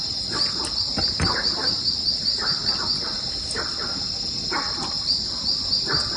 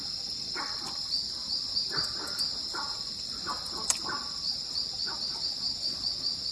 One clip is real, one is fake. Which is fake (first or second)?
second